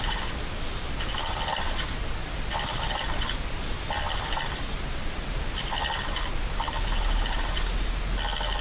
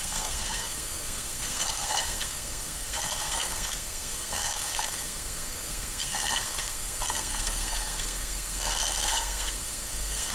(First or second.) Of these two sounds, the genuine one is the first